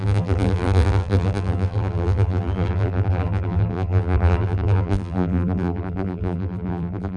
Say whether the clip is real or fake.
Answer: fake